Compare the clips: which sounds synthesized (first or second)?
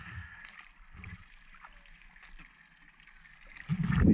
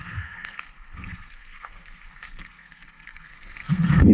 second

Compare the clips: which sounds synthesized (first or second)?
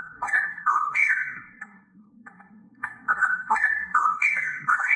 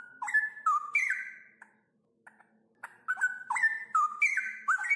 first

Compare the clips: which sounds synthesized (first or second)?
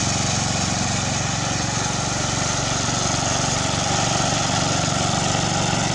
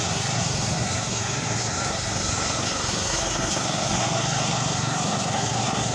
second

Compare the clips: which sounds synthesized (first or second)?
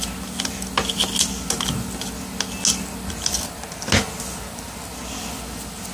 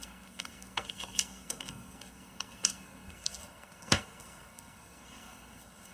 second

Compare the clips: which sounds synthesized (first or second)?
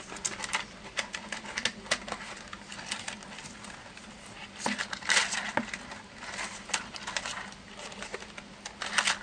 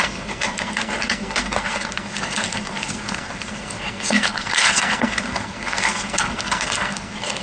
second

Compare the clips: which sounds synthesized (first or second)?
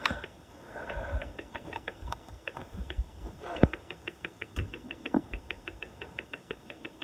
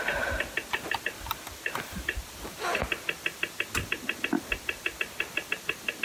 first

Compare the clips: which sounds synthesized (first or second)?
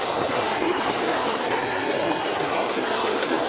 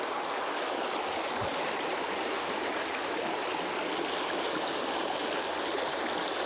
first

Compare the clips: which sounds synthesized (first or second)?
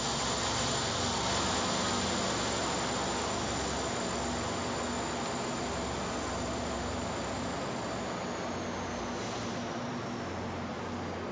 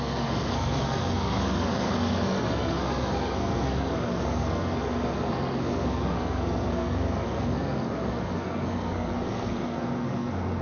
second